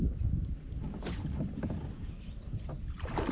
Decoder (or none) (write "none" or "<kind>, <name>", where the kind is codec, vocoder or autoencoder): none